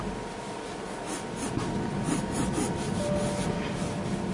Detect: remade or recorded recorded